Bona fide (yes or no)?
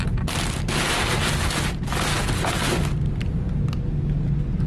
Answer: yes